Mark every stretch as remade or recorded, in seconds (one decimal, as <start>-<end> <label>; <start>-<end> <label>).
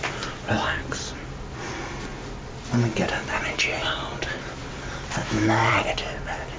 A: 0.0-5.2 recorded; 5.2-5.7 remade; 5.7-6.6 recorded